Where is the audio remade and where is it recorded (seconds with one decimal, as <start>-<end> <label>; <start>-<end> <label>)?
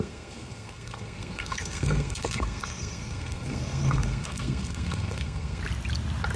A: 0.0-5.6 remade; 5.6-6.4 recorded